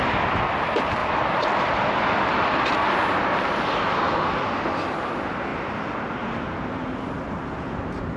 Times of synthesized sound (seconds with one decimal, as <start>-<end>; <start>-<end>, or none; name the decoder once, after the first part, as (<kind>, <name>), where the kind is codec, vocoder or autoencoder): 1.0-1.9 (vocoder, BigVGAN v2)